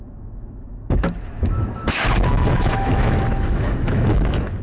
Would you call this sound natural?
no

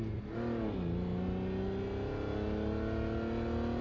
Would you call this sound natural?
yes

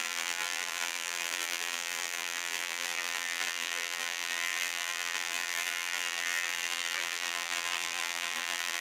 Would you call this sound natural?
no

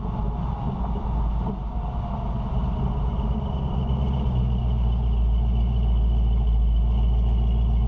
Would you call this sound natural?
yes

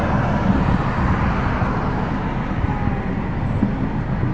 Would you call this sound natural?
yes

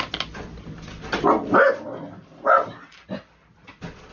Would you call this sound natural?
yes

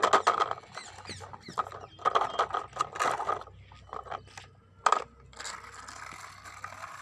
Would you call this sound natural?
yes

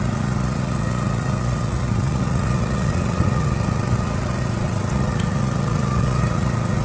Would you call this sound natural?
no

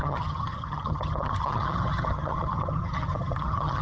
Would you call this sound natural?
no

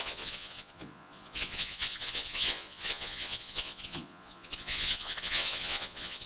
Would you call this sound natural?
no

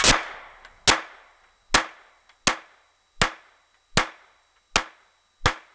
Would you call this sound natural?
yes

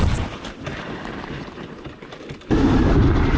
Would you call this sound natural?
no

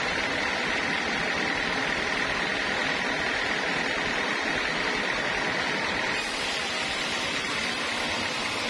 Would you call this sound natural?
yes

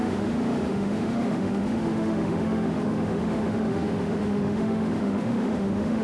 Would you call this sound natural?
no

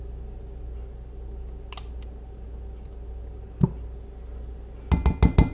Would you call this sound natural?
yes